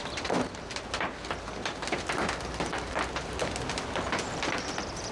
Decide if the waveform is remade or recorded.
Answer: recorded